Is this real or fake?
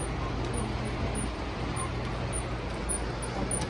real